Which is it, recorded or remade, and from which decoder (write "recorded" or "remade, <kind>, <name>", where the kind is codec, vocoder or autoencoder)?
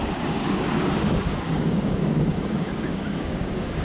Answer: remade, codec, DAC